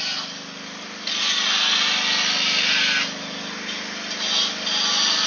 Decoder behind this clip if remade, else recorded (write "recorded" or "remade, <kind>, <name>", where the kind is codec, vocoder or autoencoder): recorded